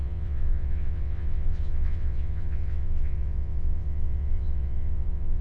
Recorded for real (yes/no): no